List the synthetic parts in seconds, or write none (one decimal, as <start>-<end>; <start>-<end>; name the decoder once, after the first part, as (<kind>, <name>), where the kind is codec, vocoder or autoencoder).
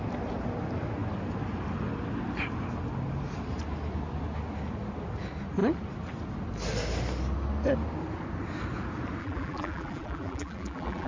9.2-11.1 (vocoder, BigVGAN v2)